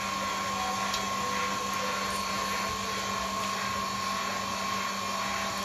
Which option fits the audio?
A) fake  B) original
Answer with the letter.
B